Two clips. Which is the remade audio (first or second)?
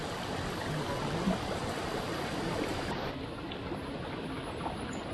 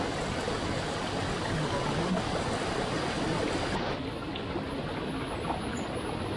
first